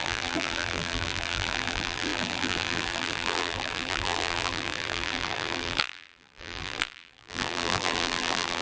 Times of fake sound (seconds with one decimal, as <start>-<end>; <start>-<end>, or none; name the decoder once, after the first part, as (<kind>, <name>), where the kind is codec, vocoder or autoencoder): 0.0-8.6 (vocoder, BigVGAN v2)